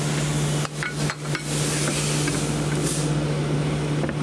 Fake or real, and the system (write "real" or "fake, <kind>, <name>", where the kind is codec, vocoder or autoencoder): real